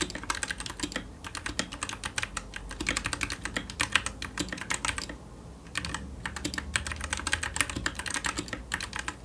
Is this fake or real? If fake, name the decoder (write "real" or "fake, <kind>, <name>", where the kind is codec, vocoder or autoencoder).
real